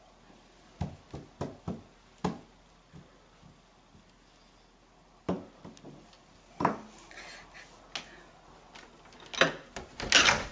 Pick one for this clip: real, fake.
real